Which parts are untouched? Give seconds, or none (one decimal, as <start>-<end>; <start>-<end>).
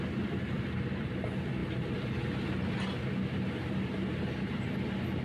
0.0-5.2